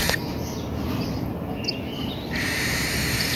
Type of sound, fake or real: real